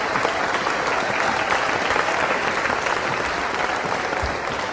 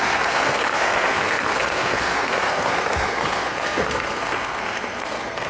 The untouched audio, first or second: first